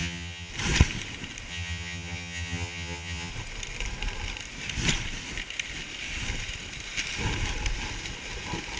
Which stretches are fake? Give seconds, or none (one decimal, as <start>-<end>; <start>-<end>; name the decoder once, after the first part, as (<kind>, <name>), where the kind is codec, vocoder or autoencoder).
0.0-0.5 (vocoder, HiFi-GAN); 1.5-3.3

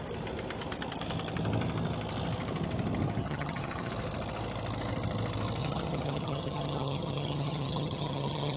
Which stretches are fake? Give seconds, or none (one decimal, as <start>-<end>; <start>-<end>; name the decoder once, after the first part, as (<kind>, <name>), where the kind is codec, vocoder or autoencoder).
3.2-3.9 (vocoder, HiFi-GAN); 5.6-8.6